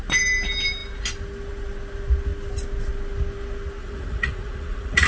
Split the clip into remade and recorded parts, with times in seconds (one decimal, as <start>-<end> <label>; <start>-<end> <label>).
0.0-3.8 recorded; 3.8-5.1 remade